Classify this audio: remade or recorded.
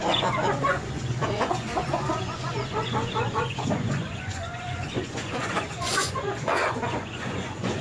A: remade